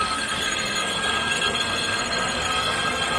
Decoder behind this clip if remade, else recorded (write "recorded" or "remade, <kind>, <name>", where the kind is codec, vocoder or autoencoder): remade, codec, SNAC